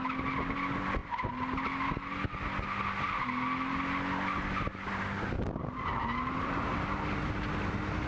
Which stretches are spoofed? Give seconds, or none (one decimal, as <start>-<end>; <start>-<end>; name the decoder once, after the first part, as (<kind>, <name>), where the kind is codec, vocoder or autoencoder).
none